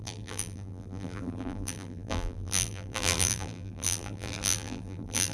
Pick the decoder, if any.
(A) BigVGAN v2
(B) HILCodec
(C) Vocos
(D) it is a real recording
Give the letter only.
A